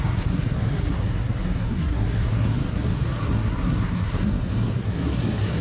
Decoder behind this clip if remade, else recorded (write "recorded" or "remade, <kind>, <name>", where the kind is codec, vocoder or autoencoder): remade, codec, SNAC